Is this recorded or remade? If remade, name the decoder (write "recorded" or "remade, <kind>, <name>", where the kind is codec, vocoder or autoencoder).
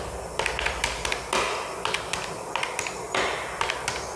recorded